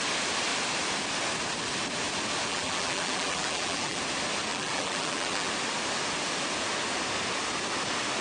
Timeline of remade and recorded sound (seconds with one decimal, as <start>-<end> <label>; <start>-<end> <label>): 0.0-2.5 recorded; 2.5-4.0 remade; 4.0-4.5 recorded; 4.5-5.5 remade; 5.5-8.2 recorded